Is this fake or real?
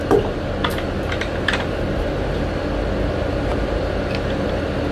real